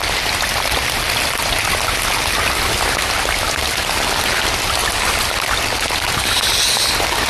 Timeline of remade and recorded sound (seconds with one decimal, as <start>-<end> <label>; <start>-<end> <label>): 0.0-7.3 recorded